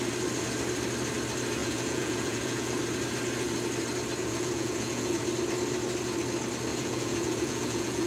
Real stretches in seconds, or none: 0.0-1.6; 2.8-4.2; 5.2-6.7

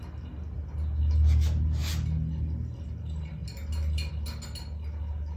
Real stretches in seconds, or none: 0.0-5.4

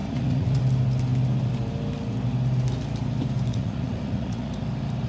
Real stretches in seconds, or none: 0.6-3.5; 4.5-5.1

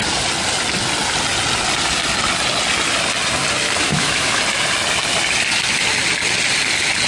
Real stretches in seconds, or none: 0.0-3.9; 4.4-7.1